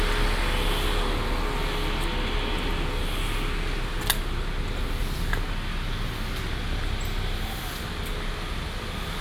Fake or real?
real